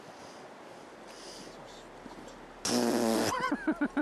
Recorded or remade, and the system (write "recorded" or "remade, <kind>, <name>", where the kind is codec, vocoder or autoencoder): recorded